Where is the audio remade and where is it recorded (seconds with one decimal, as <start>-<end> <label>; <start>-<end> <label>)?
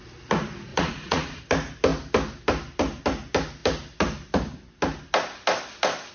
0.0-0.7 recorded; 0.7-1.4 remade; 1.4-6.1 recorded